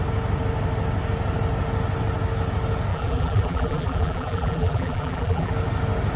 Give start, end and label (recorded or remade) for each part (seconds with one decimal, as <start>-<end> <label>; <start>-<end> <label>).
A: 0.0-2.9 recorded; 2.9-5.5 remade; 5.5-6.2 recorded